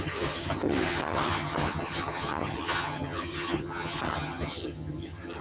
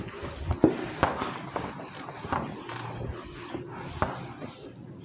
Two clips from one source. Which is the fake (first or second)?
first